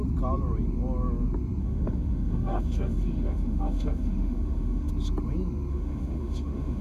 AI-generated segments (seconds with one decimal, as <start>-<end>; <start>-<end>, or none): 1.6-4.9; 5.7-6.8